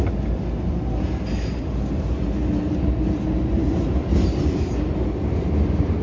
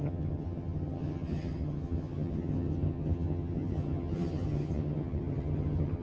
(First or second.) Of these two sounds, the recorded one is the first